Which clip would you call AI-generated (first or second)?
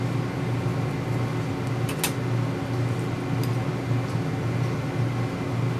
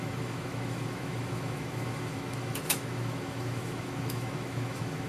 second